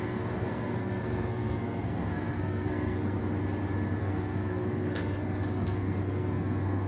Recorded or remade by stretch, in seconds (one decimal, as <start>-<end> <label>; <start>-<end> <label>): 0.0-3.2 remade; 3.2-4.0 recorded; 4.0-6.9 remade